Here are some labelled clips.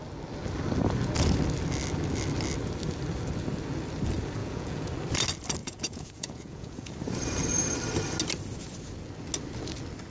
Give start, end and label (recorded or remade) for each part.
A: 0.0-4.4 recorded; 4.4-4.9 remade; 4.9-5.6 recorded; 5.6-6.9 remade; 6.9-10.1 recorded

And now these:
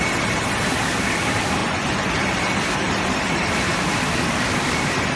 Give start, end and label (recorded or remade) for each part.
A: 0.0-1.6 recorded; 1.6-2.1 remade; 2.1-5.2 recorded